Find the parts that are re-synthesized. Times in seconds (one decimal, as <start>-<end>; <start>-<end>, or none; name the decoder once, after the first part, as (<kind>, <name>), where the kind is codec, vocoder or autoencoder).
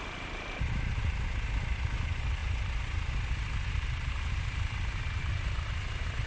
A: none